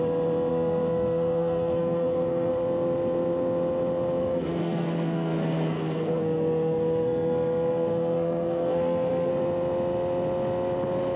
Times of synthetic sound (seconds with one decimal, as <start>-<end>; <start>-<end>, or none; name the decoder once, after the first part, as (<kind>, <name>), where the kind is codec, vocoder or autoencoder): 0.5-2.5 (codec, SNAC); 4.2-9.3